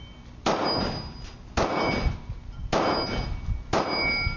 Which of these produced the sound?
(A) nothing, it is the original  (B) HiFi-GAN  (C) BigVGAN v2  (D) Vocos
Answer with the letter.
A